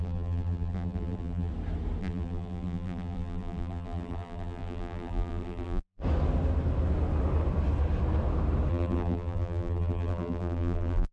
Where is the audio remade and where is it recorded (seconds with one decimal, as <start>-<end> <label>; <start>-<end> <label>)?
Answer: 0.0-1.5 remade; 1.5-2.0 recorded; 2.0-6.0 remade; 6.0-8.7 recorded; 8.7-11.1 remade